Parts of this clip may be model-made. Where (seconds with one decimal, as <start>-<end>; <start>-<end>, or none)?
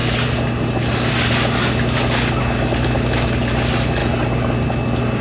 none